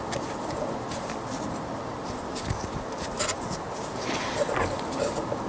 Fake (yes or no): no